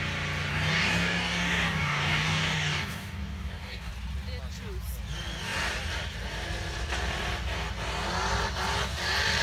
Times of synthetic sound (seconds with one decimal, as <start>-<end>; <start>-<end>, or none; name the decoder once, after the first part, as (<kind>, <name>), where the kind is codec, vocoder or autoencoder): 0.5-3.9 (codec, DAC)